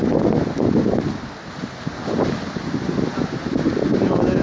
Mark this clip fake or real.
real